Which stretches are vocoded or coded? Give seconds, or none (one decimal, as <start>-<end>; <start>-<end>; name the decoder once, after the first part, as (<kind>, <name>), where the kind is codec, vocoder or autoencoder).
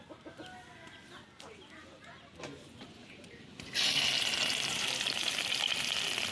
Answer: 3.0-5.7 (vocoder, BigVGAN v2)